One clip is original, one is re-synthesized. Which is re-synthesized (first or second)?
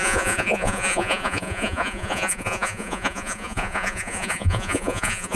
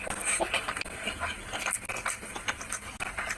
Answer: first